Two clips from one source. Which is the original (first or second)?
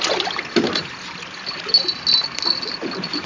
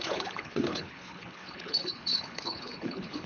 first